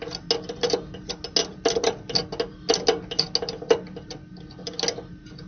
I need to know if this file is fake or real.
real